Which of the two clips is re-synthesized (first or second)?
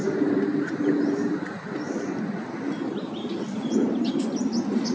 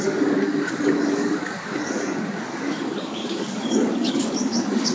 second